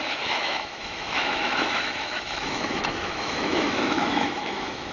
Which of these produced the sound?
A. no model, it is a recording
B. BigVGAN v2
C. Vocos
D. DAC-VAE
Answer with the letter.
D